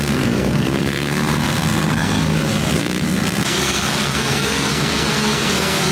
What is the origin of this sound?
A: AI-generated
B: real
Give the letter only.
A